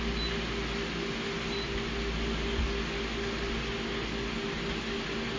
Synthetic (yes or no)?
no